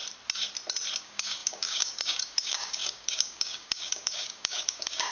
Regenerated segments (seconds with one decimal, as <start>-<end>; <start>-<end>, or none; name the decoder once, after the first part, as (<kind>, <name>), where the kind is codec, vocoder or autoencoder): 1.0-5.1 (codec, DAC)